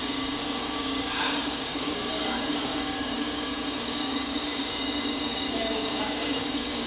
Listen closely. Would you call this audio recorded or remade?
remade